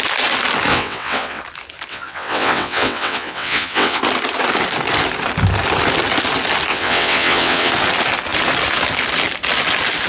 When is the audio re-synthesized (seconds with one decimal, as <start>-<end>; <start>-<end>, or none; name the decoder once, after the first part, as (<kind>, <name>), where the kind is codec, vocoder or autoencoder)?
0.7-1.4 (vocoder, WaveNeXt); 1.9-4.0; 6.7-7.7